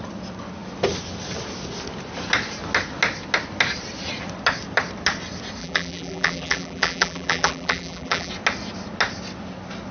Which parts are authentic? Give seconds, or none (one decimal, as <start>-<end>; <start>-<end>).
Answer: 0.0-5.6; 8.3-9.9